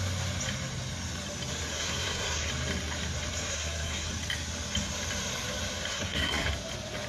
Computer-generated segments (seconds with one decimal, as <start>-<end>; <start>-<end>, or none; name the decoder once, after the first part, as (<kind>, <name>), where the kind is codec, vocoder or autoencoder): 1.7-2.5 (codec, SNAC); 3.5-4.1; 5.9-6.5